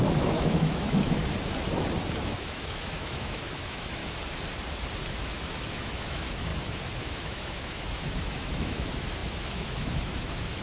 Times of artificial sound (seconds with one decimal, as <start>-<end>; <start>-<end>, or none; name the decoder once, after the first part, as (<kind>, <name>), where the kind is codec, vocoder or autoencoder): 0.0-1.2 (autoencoder, DAC-VAE); 2.4-4.0; 5.3-6.5; 7.0-10.6